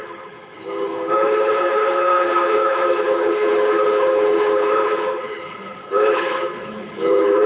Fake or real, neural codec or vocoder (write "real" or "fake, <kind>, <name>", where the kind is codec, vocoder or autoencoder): fake, codec, HILCodec